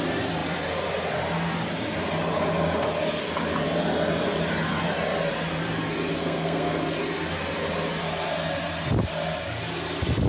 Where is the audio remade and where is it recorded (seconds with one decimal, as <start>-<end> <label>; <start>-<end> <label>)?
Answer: 0.0-6.2 recorded; 6.2-6.8 remade; 6.8-10.3 recorded